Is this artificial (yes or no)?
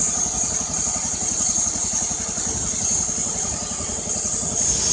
no